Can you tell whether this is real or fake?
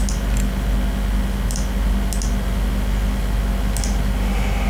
real